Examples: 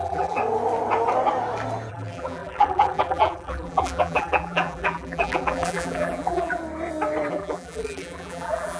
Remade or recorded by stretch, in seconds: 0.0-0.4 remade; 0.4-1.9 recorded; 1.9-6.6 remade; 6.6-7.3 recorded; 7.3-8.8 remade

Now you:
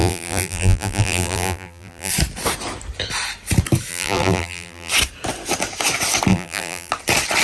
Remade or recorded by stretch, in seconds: 0.0-2.1 remade; 2.1-3.9 recorded; 3.9-4.9 remade; 4.9-6.3 recorded; 6.3-6.9 remade; 6.9-7.4 recorded

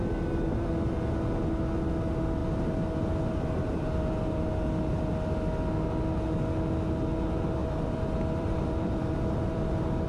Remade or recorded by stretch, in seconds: 0.0-7.6 recorded; 7.6-10.1 remade

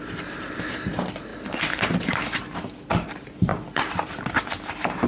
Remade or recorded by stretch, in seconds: 0.0-1.3 remade; 1.3-2.1 recorded; 2.1-5.1 remade

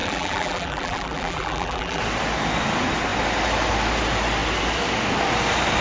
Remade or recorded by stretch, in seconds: 0.0-2.0 remade; 2.0-5.8 recorded

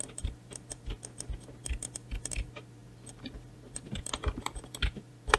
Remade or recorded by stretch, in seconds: 0.0-2.8 recorded; 2.8-4.2 remade; 4.2-5.4 recorded

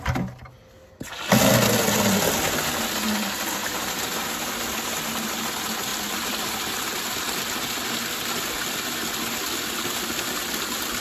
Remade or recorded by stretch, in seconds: 0.0-3.6 recorded; 3.6-4.9 remade; 4.9-11.0 recorded

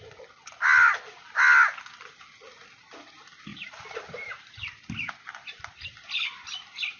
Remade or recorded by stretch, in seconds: 0.0-3.5 recorded; 3.5-4.6 remade; 4.6-7.0 recorded